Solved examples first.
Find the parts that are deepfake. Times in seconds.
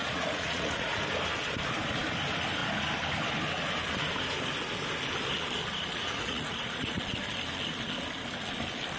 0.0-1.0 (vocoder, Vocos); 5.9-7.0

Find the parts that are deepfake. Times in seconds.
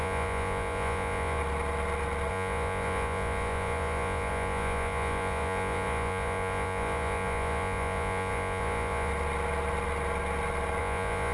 0.0-1.4 (vocoder, Vocos); 2.3-9.1; 10.8-11.3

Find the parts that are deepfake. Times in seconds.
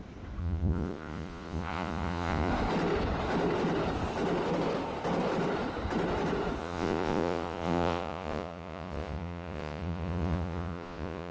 0.4-2.5 (vocoder, Vocos); 6.6-11.3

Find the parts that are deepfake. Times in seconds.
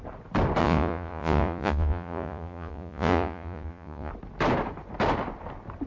0.6-4.1 (vocoder, Vocos)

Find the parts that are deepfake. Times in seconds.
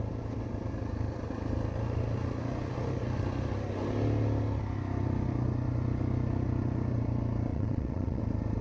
7.5-8.2 (vocoder, Vocos)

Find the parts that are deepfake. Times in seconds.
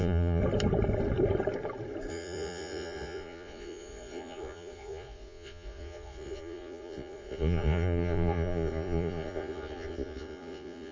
0.0-0.4 (vocoder, Vocos); 2.1-10.9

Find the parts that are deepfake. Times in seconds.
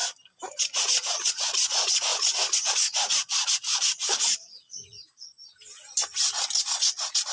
0.6-5.4 (vocoder, Vocos); 6.7-7.3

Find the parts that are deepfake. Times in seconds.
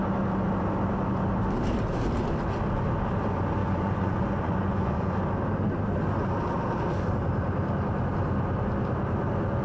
3.6-5.2 (vocoder, Vocos)